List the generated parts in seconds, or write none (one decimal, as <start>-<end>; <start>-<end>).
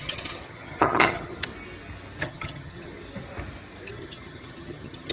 0.0-1.5; 2.2-2.9; 3.9-5.1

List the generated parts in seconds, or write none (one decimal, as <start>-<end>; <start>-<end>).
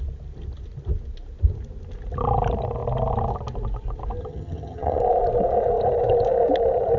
4.2-5.0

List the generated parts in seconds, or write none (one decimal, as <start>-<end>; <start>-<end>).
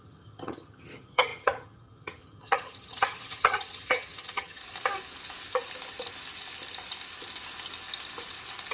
0.0-4.6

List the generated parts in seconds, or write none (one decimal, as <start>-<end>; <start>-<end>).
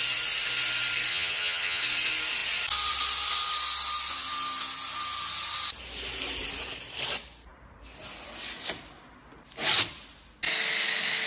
1.1-1.8